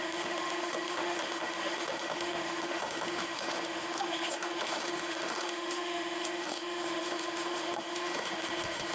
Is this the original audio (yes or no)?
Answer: no